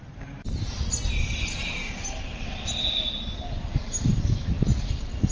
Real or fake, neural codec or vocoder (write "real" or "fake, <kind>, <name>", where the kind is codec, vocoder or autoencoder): real